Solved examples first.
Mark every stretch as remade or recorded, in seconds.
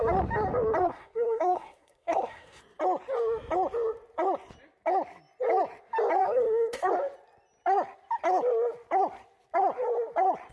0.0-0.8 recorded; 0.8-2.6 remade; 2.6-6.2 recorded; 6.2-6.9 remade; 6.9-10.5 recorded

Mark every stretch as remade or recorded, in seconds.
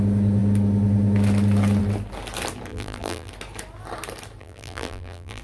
0.0-2.7 recorded; 2.7-3.3 remade; 3.3-4.4 recorded; 4.4-5.4 remade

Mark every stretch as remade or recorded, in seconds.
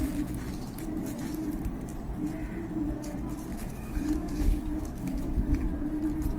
0.0-3.5 recorded; 3.5-5.5 remade; 5.5-6.4 recorded